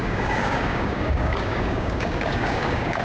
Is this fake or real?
fake